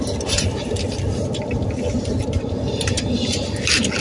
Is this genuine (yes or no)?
yes